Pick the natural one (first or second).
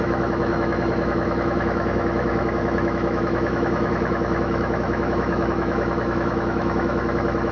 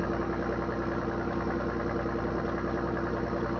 second